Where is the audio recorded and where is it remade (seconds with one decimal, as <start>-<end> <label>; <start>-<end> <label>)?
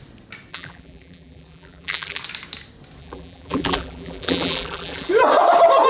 0.0-0.5 recorded; 0.5-2.2 remade; 2.2-3.0 recorded; 3.0-5.1 remade; 5.1-5.9 recorded